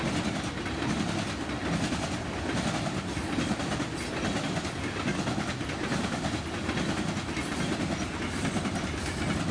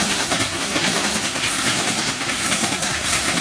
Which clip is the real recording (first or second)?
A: first